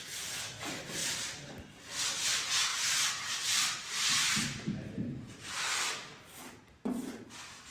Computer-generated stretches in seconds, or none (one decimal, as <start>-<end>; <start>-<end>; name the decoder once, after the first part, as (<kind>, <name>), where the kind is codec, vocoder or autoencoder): 1.0-1.8 (vocoder, BigVGAN v2); 2.7-5.7